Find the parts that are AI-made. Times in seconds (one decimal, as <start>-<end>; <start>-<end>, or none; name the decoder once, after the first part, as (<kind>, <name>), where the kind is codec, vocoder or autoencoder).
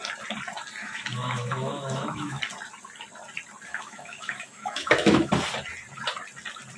0.8-2.4 (autoencoder, DAC-VAE); 3.7-5.3